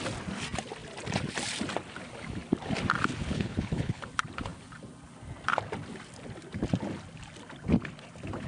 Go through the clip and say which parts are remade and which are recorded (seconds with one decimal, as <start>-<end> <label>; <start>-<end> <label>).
0.0-3.2 recorded; 3.2-4.0 remade; 4.0-8.5 recorded